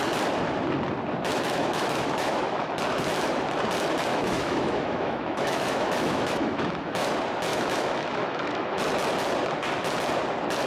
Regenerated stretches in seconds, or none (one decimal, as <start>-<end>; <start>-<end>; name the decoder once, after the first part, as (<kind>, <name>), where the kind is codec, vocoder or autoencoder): 1.3-2.7 (autoencoder, DAC-VAE); 4.1-7.1; 7.5-8.8